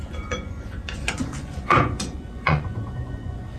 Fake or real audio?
fake